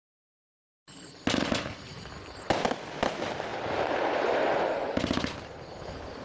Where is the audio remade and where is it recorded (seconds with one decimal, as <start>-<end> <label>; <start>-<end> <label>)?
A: 0.0-6.2 recorded